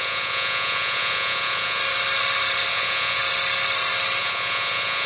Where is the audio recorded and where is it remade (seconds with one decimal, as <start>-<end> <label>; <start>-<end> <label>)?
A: 0.0-1.8 remade; 1.8-2.7 recorded; 2.7-3.2 remade; 3.2-4.2 recorded; 4.2-5.1 remade